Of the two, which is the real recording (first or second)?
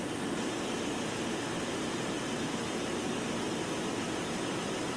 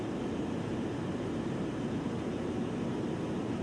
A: first